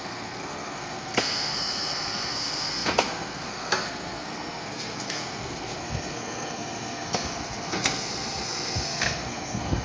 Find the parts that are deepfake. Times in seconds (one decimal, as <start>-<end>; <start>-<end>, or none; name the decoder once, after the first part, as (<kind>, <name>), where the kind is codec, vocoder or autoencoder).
0.0-9.8 (codec, SNAC)